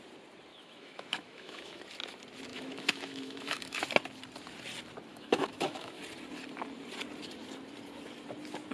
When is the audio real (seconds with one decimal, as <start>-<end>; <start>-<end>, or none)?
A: 0.0-0.5; 1.8-2.5; 3.8-5.1; 6.0-8.7